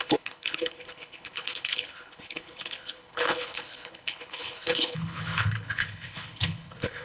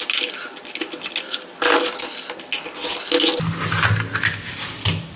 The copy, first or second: first